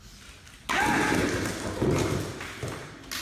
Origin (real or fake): real